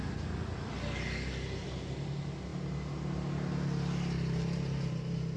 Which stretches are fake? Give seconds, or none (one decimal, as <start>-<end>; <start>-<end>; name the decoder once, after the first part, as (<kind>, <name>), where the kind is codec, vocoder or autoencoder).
none

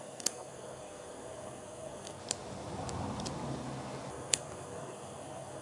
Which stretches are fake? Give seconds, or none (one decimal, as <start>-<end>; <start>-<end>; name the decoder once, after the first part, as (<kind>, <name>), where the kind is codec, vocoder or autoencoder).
0.0-2.2 (codec, SNAC); 4.1-5.6

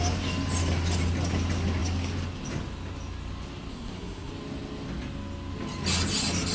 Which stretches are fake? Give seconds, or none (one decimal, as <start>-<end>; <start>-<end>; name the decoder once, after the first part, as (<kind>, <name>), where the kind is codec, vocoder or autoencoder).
3.7-4.3 (codec, SNAC)

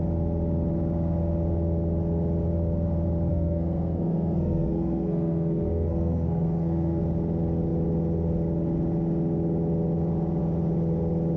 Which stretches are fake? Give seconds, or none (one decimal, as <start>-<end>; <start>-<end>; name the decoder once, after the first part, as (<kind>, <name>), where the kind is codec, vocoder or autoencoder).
3.3-7.0 (codec, SNAC)